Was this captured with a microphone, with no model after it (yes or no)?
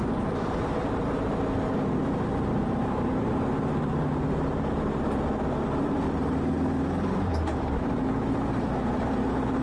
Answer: no